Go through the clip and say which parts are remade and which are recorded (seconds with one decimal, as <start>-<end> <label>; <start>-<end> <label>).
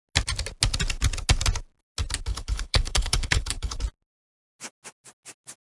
0.0-2.3 recorded; 2.3-3.8 remade; 3.8-5.6 recorded